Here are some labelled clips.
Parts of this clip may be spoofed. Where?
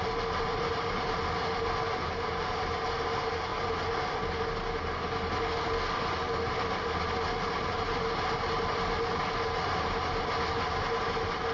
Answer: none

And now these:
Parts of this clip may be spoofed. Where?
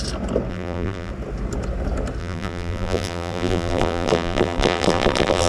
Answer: 0.5-1.1 (vocoder, BigVGAN v2); 2.2-5.5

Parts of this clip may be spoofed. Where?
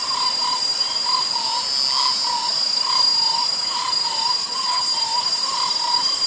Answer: 4.4-5.0 (vocoder, HiFi-GAN)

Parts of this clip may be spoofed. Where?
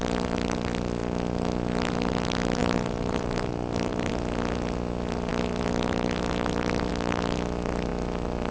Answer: 2.6-4.1 (vocoder, BigVGAN v2)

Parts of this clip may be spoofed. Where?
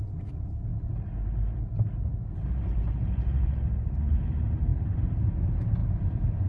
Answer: 4.7-5.3 (vocoder, BigVGAN v2); 5.8-6.5